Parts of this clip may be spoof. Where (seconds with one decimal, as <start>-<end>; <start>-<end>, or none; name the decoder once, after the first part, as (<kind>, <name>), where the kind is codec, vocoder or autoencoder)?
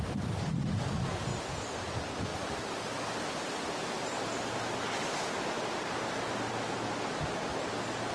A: none